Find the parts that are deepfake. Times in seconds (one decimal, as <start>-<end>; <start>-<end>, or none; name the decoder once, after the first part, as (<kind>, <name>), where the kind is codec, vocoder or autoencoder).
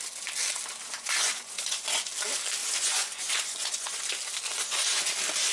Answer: 0.8-2.1 (vocoder, Vocos); 2.6-4.0; 4.5-5.1